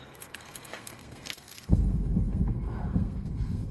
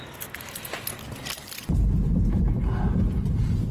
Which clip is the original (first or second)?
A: second